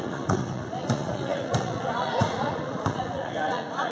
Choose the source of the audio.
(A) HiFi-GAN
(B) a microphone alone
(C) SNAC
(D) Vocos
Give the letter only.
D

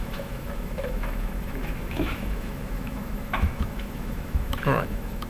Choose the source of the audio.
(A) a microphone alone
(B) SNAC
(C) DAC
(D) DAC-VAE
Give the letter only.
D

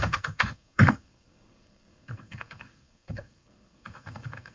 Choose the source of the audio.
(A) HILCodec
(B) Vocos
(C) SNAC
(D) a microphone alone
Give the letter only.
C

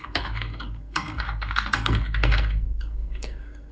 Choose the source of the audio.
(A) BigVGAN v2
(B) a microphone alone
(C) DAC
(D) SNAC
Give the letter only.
D